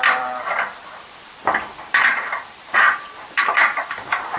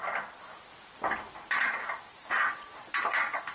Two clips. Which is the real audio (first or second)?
second